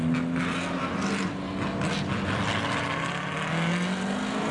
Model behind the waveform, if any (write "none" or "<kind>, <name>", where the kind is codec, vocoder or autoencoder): none